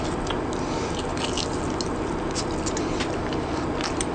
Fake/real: real